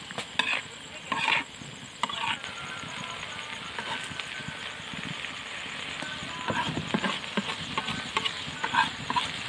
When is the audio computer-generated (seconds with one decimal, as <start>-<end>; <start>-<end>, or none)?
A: none